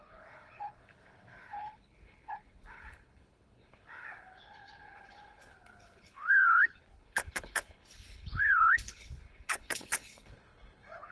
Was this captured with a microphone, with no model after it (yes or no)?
no